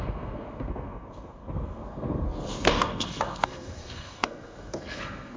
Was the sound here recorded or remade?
remade